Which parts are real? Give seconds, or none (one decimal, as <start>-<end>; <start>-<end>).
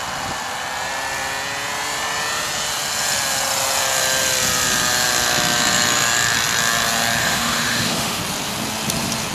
0.0-7.2; 8.2-9.3